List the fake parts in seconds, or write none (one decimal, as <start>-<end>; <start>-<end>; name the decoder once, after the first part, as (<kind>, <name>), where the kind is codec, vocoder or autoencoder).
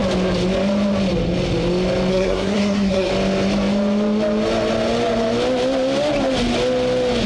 2.1-3.1 (codec, SNAC)